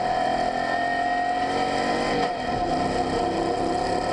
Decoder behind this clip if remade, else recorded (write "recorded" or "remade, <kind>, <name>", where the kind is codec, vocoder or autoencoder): recorded